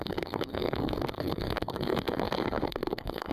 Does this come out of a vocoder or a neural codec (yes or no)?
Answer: yes